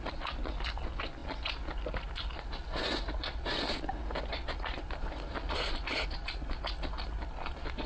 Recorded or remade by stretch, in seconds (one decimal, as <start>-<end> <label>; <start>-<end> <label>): 0.0-7.9 recorded